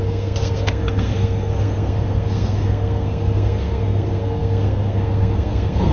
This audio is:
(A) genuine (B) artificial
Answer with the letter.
B